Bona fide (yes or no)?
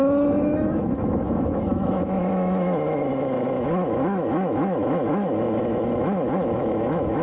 no